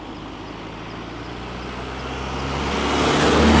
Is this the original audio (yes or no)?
yes